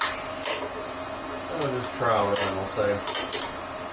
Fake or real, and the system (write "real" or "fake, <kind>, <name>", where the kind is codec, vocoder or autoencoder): real